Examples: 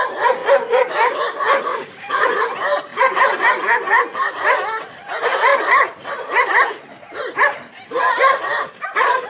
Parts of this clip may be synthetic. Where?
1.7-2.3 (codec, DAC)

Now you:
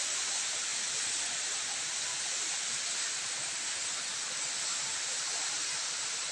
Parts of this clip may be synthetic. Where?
none